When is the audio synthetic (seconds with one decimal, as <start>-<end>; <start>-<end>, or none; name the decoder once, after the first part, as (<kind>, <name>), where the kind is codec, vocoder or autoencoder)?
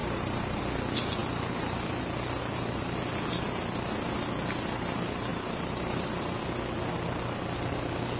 0.0-0.6 (vocoder, BigVGAN v2); 5.3-6.2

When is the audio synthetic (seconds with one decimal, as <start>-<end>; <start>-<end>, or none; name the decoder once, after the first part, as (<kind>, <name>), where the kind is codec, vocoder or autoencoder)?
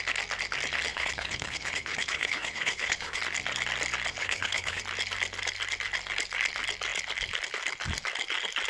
0.9-3.2 (codec, HILCodec); 4.2-4.8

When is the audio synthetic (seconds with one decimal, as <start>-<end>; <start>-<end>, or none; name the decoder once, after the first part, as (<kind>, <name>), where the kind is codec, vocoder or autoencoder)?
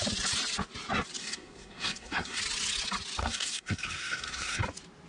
1.2-2.4 (codec, SNAC); 3.2-4.6